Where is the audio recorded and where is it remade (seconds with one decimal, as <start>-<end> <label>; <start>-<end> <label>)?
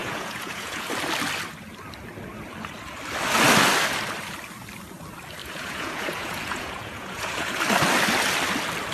0.0-0.9 remade; 0.9-5.4 recorded; 5.4-7.6 remade; 7.6-8.9 recorded